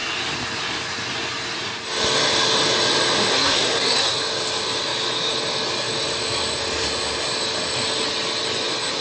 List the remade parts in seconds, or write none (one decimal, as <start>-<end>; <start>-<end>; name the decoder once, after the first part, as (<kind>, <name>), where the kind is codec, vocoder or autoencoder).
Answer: 3.3-4.2 (codec, SNAC)